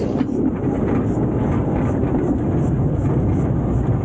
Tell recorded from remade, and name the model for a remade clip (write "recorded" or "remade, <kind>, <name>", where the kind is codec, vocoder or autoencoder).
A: recorded